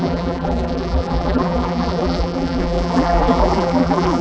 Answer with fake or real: fake